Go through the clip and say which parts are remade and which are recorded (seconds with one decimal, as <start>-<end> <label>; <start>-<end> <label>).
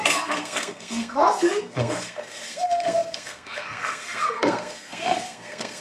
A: 0.0-5.8 remade